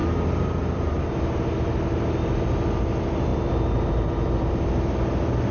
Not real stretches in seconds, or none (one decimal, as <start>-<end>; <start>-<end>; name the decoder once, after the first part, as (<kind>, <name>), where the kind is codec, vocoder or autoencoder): 0.0-1.0 (vocoder, BigVGAN v2); 3.3-4.5

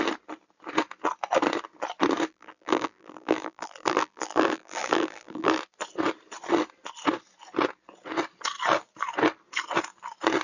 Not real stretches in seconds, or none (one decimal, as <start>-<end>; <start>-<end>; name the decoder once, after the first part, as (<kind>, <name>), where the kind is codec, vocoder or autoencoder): 2.3-5.6 (vocoder, BigVGAN v2)

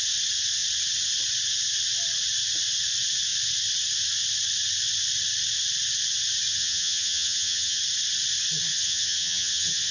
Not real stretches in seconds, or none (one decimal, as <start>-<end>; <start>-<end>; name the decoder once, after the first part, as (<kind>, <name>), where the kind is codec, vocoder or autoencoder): 6.5-7.8 (vocoder, HiFi-GAN); 8.7-9.9

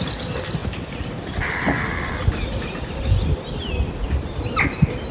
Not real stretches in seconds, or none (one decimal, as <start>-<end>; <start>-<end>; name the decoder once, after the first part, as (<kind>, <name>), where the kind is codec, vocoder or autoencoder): none

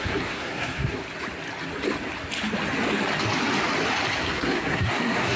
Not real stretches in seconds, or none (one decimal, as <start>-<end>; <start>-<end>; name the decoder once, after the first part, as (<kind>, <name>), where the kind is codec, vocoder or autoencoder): 0.0-1.0 (codec, SNAC); 4.2-5.4

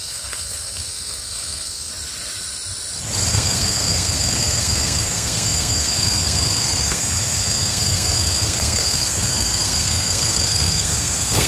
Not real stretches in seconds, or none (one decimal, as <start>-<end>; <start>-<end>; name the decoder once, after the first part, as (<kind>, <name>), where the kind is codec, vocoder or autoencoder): 0.0-1.9 (codec, SNAC); 3.3-11.5

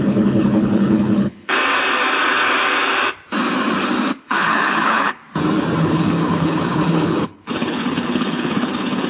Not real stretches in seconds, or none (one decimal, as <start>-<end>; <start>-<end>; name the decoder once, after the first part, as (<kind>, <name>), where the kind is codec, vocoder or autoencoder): 0.0-1.6 (codec, HILCodec); 4.2-5.2; 5.8-9.1